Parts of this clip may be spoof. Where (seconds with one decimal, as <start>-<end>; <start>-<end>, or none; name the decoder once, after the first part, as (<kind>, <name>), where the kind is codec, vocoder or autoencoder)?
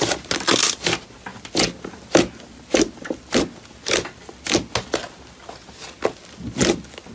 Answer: none